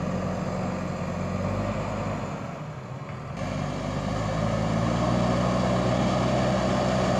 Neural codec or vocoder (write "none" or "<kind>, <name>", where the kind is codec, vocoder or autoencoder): none